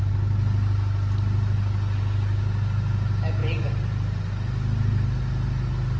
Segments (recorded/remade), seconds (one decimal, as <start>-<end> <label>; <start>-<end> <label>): 0.0-6.0 recorded